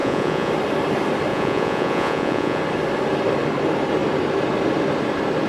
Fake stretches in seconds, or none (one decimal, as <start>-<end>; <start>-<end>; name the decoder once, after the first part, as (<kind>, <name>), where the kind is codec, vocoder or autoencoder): 0.0-0.5 (vocoder, Vocos); 1.3-2.6